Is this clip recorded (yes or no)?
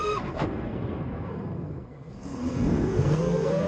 no